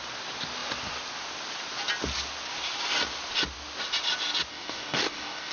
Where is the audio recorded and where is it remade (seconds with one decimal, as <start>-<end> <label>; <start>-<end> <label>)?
0.0-4.5 recorded; 4.5-5.5 remade